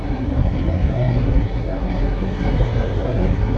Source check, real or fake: fake